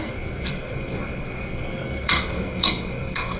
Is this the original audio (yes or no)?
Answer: no